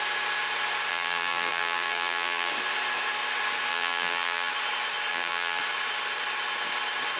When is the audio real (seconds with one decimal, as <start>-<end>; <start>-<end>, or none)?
0.0-0.9; 2.5-3.7; 4.5-5.1; 5.6-7.2

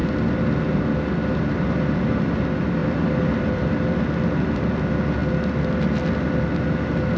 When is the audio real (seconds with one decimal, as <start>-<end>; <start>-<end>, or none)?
0.0-2.8; 4.5-7.2

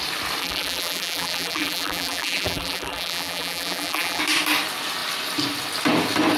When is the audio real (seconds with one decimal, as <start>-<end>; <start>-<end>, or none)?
0.0-0.4; 4.2-6.4